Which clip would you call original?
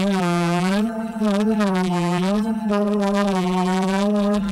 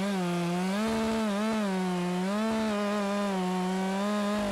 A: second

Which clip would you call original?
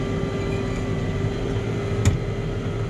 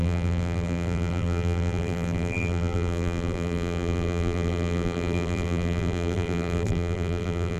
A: first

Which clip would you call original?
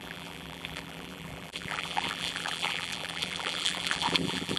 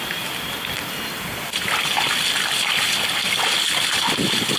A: second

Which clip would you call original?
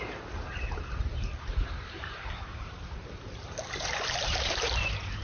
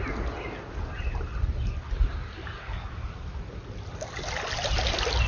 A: second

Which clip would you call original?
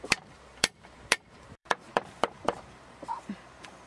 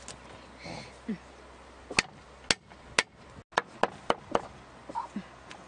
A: second